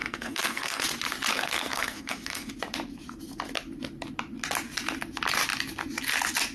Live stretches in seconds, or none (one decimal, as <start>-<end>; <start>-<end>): 0.8-1.3; 2.5-6.5